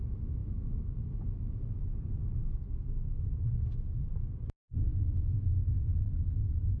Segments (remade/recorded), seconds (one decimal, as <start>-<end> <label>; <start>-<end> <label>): 0.0-0.4 recorded; 0.4-1.8 remade; 1.8-4.9 recorded; 4.9-6.8 remade